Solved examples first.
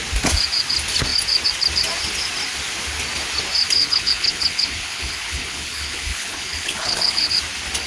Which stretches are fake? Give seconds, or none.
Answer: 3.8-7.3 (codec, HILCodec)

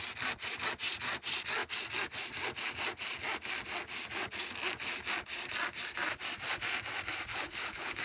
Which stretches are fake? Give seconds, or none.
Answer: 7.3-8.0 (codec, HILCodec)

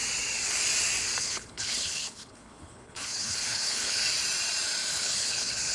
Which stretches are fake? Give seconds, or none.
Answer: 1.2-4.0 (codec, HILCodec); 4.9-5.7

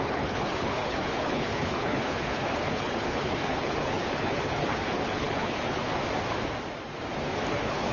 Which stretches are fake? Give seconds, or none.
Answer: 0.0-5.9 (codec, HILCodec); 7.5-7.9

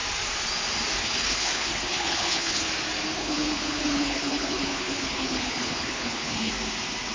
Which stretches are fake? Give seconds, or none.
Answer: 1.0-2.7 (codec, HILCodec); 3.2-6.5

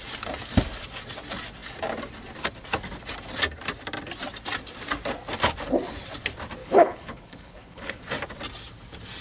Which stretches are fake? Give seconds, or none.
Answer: 6.6-8.0 (codec, HILCodec)

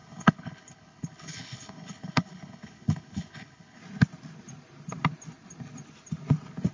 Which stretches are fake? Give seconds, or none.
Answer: 0.0-3.8 (codec, HILCodec)

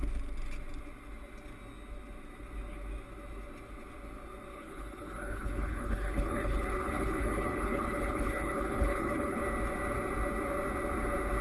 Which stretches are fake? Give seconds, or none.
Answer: 4.5-9.4 (codec, HILCodec)